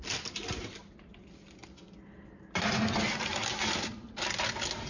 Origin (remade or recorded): recorded